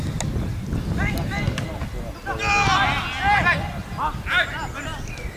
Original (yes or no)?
yes